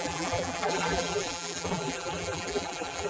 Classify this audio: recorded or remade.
remade